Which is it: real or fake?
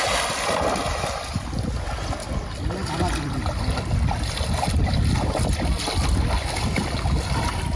real